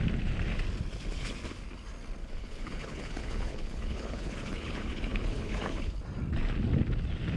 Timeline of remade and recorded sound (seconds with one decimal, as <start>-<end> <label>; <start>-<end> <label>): 0.0-2.2 recorded; 2.2-6.0 remade; 6.0-7.4 recorded

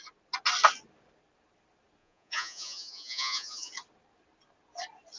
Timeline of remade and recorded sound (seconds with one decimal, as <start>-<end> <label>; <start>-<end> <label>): 0.0-2.0 recorded; 2.0-3.7 remade; 3.7-5.2 recorded

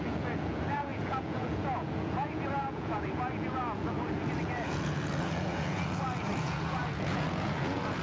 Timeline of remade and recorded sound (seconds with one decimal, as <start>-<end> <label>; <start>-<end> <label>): 0.0-8.0 remade

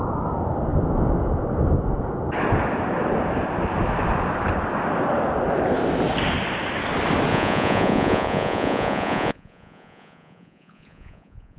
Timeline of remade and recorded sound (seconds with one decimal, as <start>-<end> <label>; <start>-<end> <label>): 0.0-7.3 recorded; 7.3-11.6 remade

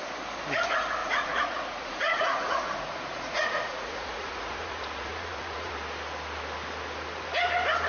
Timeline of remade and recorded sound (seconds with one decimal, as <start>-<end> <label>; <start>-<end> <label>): 0.0-1.0 recorded; 1.0-5.7 remade; 5.7-7.9 recorded

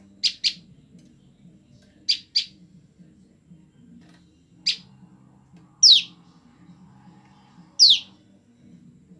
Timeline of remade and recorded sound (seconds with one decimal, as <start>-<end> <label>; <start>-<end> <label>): 0.0-9.2 recorded

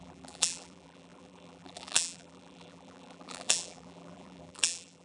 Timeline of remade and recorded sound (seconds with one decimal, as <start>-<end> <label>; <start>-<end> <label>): 0.0-5.0 remade

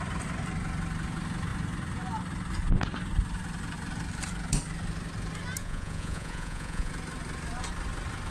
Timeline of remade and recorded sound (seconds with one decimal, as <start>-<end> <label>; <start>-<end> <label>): 0.0-5.6 recorded; 5.6-6.9 remade; 6.9-8.3 recorded